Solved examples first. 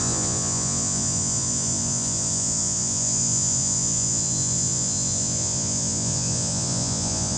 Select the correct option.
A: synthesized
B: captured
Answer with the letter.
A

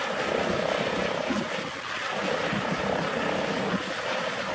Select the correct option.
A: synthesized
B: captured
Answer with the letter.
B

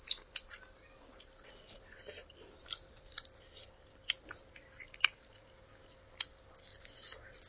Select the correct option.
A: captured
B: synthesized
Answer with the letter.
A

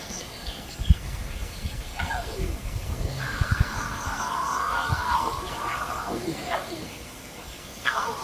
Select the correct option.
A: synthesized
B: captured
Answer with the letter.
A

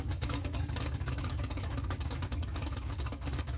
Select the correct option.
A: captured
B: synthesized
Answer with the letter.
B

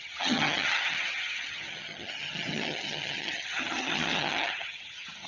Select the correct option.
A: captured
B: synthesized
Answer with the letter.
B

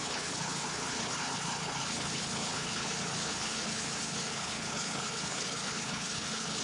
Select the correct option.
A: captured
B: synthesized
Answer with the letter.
B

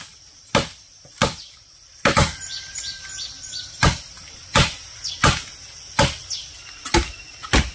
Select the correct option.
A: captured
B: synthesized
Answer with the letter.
A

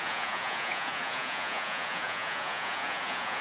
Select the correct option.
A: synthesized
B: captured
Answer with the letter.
A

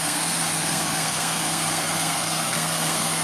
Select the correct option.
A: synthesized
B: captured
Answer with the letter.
A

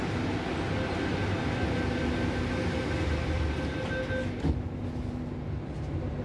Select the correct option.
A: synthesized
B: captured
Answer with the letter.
B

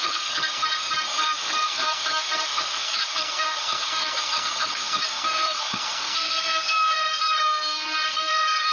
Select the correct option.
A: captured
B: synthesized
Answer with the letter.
B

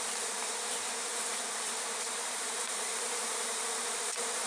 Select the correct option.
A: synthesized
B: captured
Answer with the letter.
A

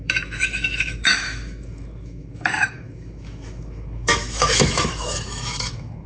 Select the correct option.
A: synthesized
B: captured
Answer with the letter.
A